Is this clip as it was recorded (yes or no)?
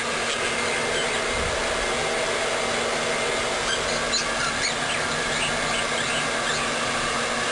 yes